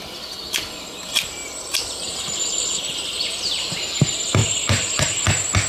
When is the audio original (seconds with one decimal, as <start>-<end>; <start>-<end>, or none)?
0.0-1.4; 3.8-4.4; 5.0-5.7